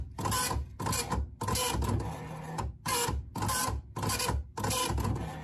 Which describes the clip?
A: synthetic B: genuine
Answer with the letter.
B